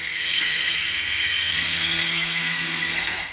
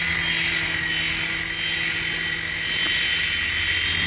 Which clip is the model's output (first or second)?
first